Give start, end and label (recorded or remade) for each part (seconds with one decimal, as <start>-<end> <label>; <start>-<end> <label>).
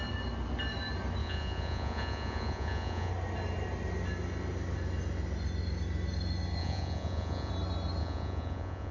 0.0-1.2 recorded; 1.2-3.1 remade; 3.1-6.6 recorded; 6.6-7.5 remade; 7.5-8.0 recorded; 8.0-8.9 remade